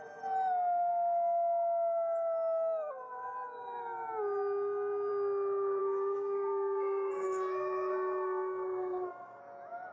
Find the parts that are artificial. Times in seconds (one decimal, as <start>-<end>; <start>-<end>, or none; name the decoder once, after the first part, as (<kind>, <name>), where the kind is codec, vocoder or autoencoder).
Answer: 5.8-9.4 (codec, SNAC)